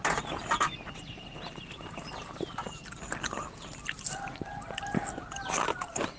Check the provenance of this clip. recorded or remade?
recorded